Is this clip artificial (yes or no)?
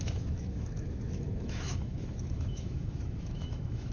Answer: yes